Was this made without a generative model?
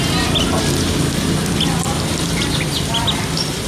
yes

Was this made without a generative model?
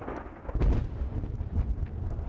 yes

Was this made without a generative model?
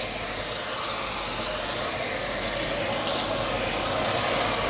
yes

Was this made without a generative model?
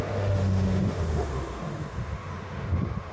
no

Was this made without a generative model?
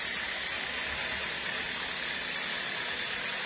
yes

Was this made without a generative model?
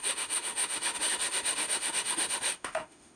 no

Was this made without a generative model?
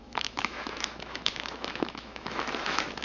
no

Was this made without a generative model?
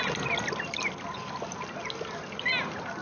yes